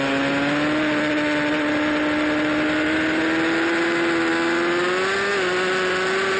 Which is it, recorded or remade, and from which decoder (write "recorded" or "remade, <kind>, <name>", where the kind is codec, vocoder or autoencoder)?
recorded